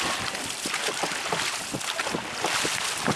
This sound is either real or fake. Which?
real